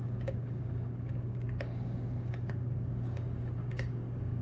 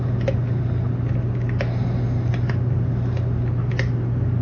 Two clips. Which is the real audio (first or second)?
second